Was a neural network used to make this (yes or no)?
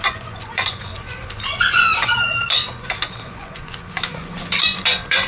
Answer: yes